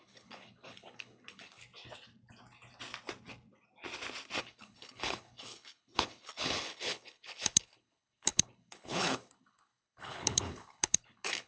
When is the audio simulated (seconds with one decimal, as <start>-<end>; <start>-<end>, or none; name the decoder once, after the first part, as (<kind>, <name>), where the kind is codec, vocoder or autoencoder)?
0.0-1.6 (codec, HILCodec); 4.4-11.5